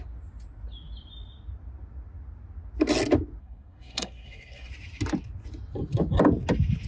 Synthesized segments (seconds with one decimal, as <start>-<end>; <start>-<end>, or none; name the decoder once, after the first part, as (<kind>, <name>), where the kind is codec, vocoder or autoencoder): 3.4-4.7 (codec, SNAC)